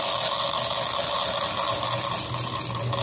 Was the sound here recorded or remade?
recorded